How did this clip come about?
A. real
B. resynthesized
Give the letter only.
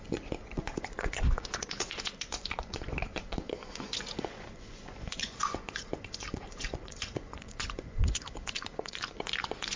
B